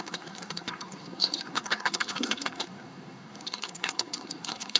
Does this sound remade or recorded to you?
remade